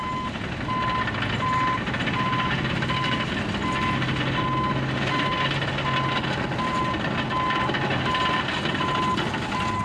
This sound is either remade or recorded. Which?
recorded